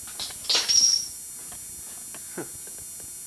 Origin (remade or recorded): recorded